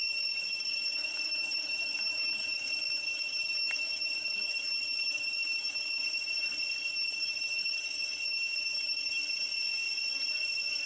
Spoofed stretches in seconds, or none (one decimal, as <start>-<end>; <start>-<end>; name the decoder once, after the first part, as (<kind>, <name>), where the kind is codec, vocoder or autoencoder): 0.0-6.0 (autoencoder, DAC-VAE); 6.9-9.2